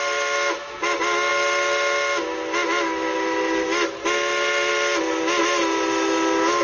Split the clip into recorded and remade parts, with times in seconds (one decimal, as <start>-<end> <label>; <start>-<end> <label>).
0.0-6.6 recorded